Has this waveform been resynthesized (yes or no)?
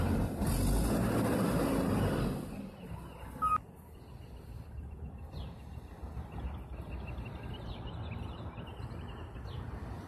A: no